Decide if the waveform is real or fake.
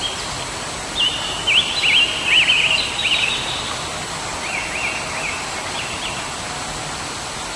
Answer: real